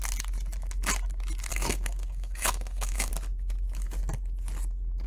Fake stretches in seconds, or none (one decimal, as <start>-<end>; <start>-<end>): 1.5-3.1